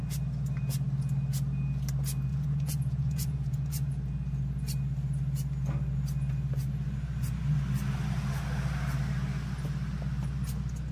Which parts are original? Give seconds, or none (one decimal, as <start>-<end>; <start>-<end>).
0.0-2.3; 3.9-10.9